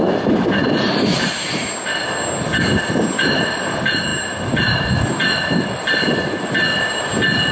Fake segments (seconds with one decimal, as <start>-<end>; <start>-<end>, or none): none